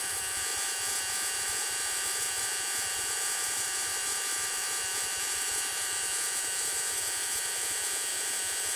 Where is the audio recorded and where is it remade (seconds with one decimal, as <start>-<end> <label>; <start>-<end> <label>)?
0.0-8.8 remade